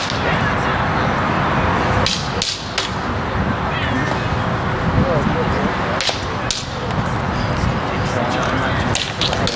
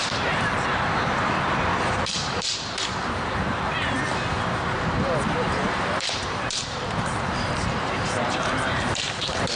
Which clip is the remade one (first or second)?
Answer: second